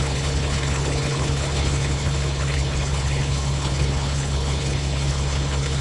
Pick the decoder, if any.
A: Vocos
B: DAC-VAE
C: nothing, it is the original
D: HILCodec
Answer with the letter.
D